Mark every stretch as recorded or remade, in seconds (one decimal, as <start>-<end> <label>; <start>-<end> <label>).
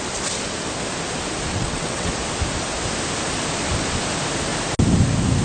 0.0-1.5 recorded; 1.5-2.1 remade; 2.1-5.4 recorded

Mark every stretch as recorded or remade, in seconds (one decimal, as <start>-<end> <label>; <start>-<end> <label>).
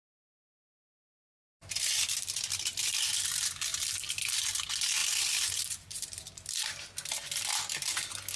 0.0-8.4 recorded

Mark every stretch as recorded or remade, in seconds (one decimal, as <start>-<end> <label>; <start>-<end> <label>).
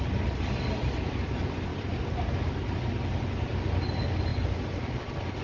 0.0-5.4 recorded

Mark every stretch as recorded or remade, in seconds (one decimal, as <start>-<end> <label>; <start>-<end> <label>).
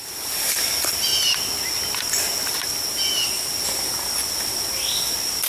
0.0-5.5 recorded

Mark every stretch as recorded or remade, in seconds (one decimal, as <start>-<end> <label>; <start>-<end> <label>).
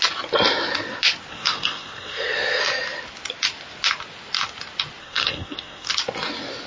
0.0-1.3 recorded; 1.3-2.6 remade; 2.6-5.0 recorded; 5.0-5.9 remade; 5.9-6.7 recorded